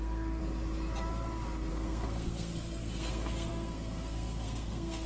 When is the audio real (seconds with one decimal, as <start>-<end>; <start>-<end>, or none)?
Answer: 0.4-1.7